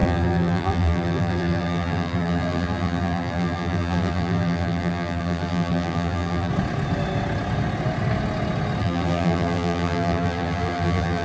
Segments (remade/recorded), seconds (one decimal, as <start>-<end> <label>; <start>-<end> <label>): 0.0-6.5 remade; 6.5-8.8 recorded; 8.8-11.2 remade